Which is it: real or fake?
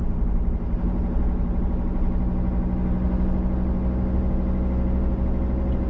real